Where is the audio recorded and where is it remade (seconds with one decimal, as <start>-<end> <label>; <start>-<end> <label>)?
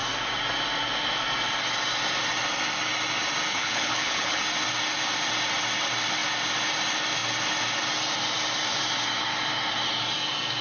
0.0-3.5 recorded; 3.5-4.4 remade; 4.4-10.6 recorded